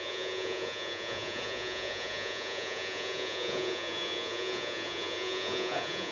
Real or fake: fake